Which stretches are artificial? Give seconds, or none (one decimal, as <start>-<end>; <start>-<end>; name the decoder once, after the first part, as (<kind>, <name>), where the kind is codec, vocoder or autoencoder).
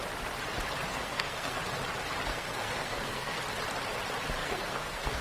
0.9-1.6 (codec, SNAC); 2.3-3.4; 4.4-5.2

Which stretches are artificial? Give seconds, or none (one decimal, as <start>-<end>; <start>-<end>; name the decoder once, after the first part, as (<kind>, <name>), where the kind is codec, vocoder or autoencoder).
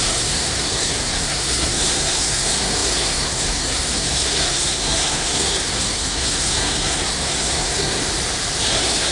0.0-8.0 (codec, SNAC); 8.7-9.1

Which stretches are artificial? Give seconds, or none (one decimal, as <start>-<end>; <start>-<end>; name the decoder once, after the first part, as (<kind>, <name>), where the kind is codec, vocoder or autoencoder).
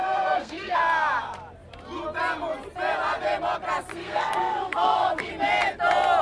0.0-0.8 (codec, SNAC); 3.9-5.3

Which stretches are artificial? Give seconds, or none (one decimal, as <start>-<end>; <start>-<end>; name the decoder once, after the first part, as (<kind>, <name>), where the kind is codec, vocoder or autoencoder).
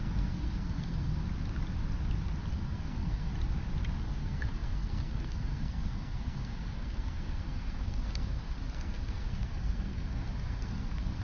0.0-1.2 (codec, SNAC); 2.5-3.3; 4.0-11.2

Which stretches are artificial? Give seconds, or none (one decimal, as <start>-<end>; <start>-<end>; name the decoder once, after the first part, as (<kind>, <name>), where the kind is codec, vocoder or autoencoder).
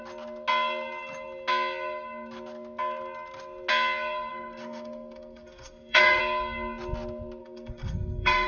4.3-6.2 (codec, SNAC); 7.4-8.5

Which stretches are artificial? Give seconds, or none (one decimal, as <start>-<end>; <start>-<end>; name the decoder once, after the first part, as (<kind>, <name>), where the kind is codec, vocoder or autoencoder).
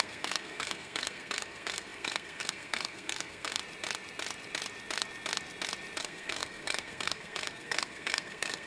0.0-3.6 (codec, SNAC); 6.0-8.7